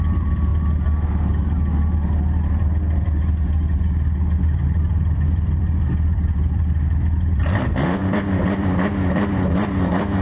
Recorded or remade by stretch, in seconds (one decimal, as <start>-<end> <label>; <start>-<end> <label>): 0.0-0.5 remade; 0.5-4.4 recorded; 4.4-10.2 remade